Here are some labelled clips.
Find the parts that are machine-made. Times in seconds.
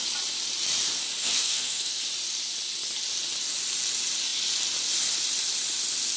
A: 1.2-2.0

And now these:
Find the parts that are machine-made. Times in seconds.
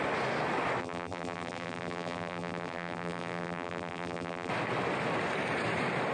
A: 0.8-4.5